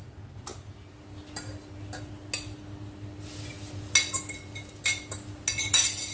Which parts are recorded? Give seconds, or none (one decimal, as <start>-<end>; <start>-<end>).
0.0-6.1